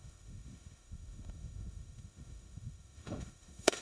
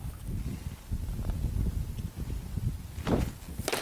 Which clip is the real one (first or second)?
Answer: second